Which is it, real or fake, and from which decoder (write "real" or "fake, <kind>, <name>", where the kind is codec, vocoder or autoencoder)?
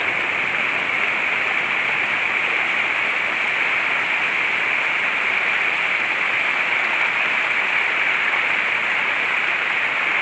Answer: real